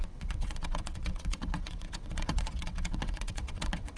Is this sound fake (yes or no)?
yes